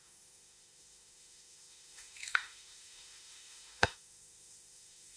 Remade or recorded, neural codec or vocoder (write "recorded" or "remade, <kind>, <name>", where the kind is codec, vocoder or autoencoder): remade, autoencoder, DAC-VAE